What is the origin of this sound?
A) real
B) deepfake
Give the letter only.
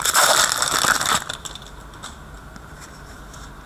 B